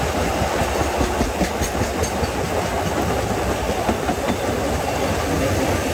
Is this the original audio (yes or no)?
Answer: yes